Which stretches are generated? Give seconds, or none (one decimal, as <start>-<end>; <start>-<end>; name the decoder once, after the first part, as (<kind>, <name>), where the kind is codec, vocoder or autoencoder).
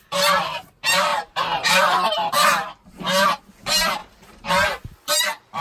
1.1-1.8 (vocoder, BigVGAN v2); 4.0-4.5